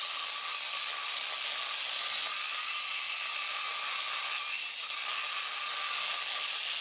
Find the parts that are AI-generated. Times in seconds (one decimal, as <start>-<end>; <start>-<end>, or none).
none